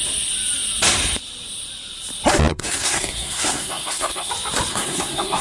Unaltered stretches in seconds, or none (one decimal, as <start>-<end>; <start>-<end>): 0.0-2.5; 4.3-4.7